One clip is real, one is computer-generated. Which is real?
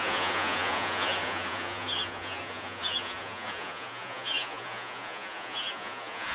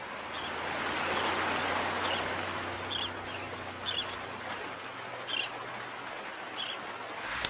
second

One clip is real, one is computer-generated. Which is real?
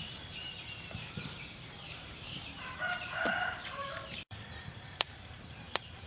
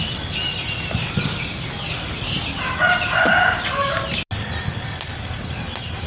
second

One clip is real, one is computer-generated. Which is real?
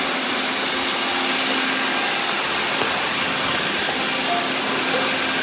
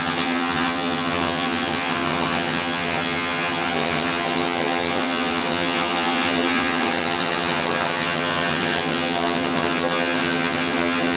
first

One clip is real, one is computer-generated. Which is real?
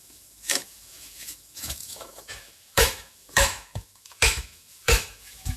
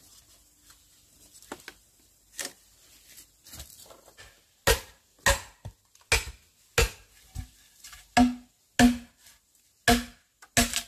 second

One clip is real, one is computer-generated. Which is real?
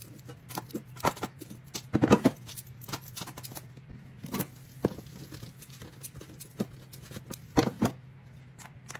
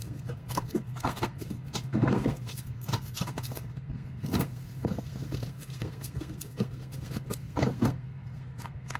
first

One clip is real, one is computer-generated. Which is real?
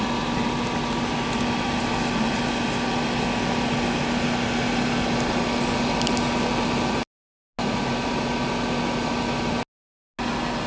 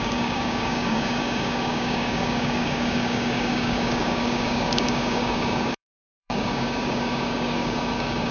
first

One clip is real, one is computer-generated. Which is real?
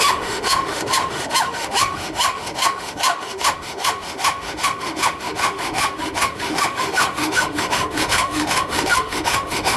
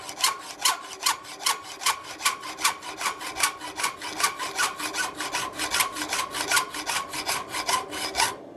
second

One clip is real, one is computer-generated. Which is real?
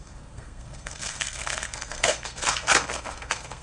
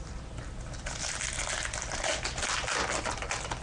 second